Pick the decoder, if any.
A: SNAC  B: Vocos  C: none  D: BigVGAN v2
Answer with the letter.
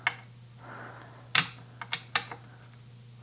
C